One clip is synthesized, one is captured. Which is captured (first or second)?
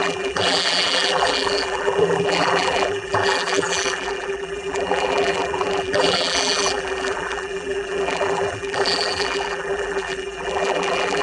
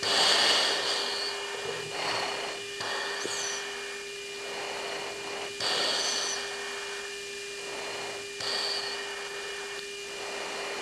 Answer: second